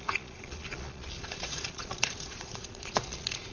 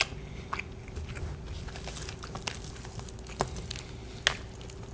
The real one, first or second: second